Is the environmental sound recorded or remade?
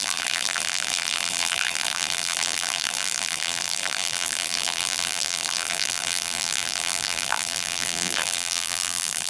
remade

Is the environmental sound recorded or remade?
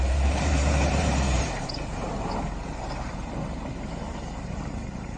remade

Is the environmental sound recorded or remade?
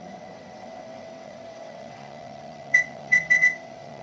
remade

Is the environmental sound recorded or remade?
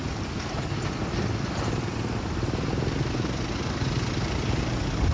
recorded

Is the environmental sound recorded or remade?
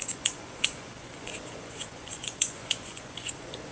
remade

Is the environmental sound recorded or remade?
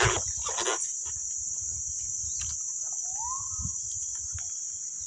recorded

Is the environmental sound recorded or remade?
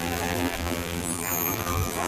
remade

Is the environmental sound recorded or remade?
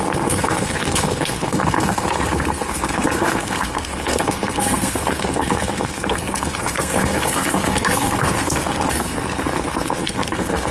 remade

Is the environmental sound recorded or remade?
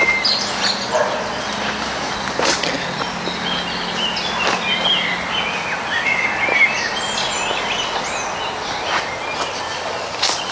recorded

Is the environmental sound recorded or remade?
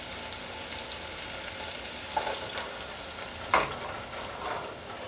recorded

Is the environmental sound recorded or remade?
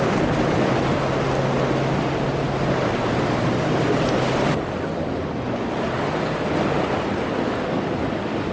recorded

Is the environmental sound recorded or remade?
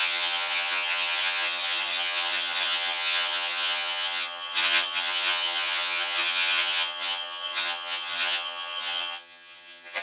remade